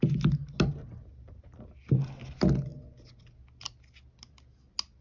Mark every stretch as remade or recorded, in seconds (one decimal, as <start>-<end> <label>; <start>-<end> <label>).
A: 0.0-5.0 recorded

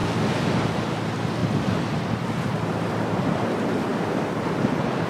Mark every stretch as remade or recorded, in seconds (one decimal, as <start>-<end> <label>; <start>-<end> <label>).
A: 0.0-0.7 remade; 0.7-1.4 recorded; 1.4-2.9 remade; 2.9-5.1 recorded

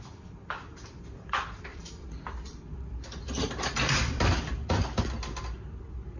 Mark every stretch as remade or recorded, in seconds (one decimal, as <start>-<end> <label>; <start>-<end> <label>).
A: 0.0-1.7 recorded; 1.7-3.5 remade; 3.5-6.2 recorded

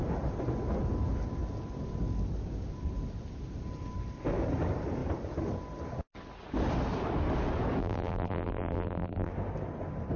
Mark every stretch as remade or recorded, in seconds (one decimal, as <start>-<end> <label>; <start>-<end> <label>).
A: 0.0-7.8 recorded; 7.8-9.3 remade; 9.3-10.2 recorded

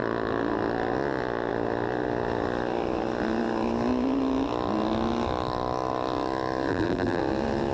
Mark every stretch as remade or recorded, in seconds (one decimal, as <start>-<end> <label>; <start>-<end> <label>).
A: 0.0-6.7 recorded; 6.7-7.2 remade; 7.2-7.7 recorded

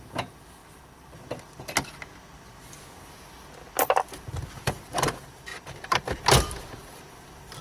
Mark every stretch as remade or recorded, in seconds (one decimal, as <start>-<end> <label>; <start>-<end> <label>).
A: 0.0-0.6 remade; 0.6-4.5 recorded; 4.5-7.6 remade